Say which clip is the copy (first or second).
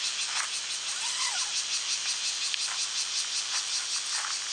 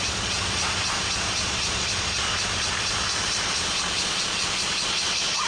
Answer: second